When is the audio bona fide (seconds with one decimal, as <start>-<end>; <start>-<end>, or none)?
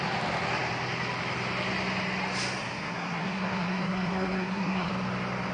0.0-2.6; 4.9-5.5